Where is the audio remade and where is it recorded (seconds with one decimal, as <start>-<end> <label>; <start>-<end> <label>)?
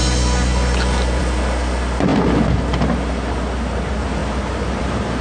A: 0.0-5.2 recorded